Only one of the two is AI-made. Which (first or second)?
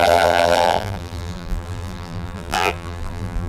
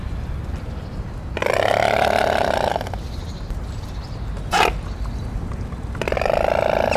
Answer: first